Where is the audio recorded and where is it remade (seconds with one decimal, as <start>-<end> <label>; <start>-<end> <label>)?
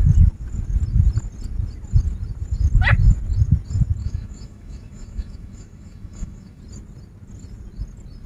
0.0-4.0 recorded; 4.0-6.6 remade; 6.6-8.3 recorded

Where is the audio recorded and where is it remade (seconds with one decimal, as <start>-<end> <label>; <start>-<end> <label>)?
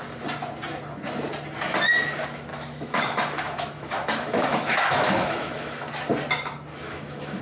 0.0-2.5 recorded; 2.5-5.9 remade; 5.9-6.7 recorded; 6.7-7.4 remade